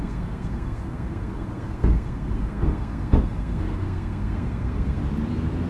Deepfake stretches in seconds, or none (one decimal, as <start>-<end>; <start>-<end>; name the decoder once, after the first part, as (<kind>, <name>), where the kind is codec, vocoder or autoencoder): 0.0-5.0 (codec, SNAC)

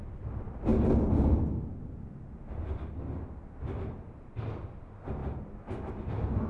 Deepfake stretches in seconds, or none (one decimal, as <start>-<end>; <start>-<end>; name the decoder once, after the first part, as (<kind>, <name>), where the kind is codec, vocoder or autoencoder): none

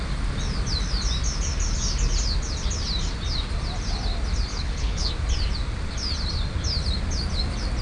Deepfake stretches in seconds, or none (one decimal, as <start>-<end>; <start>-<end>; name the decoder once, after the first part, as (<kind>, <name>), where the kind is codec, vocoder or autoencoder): 4.5-5.1 (codec, HILCodec)

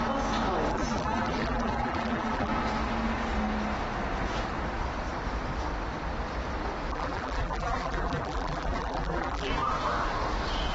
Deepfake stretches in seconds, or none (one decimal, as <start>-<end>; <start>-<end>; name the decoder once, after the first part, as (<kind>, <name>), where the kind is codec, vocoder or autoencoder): 0.7-2.5 (vocoder, BigVGAN v2); 6.9-9.5

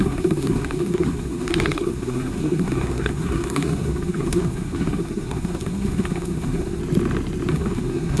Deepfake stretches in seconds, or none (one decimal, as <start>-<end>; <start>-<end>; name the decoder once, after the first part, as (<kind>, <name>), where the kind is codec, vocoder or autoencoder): 0.0-6.8 (codec, SNAC); 7.5-8.2

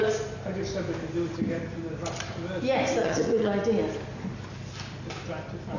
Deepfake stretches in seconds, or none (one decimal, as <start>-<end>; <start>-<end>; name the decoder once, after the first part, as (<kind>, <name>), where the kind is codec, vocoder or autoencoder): 3.0-3.5 (vocoder, HiFi-GAN)